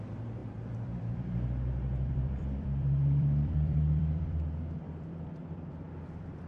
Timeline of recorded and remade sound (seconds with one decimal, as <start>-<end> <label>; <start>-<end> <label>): 0.0-6.5 remade